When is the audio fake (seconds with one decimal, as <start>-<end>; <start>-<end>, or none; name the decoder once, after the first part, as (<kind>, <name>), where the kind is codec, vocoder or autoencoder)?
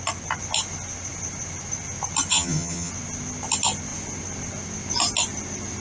2.3-2.9 (vocoder, HiFi-GAN)